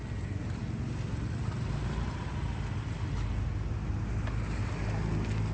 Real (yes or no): yes